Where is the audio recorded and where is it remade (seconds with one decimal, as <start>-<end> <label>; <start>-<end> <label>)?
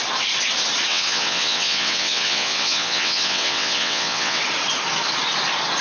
0.0-0.9 recorded; 0.9-4.4 remade; 4.4-5.8 recorded